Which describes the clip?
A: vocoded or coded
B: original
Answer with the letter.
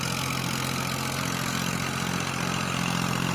B